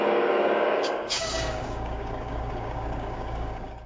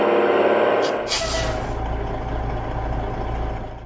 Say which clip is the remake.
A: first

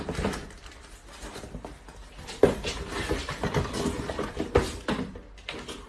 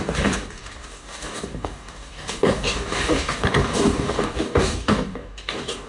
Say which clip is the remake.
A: second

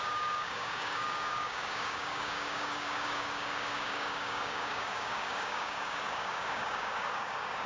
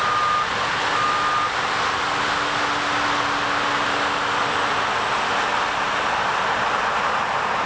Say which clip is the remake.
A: first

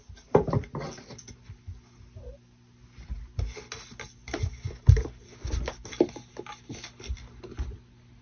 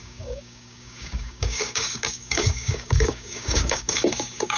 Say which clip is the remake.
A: second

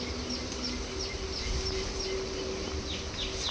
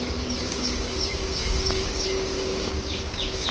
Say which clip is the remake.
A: second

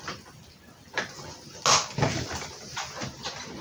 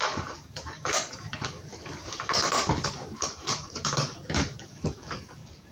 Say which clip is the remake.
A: second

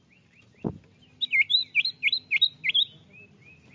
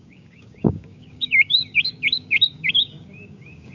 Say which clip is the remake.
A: second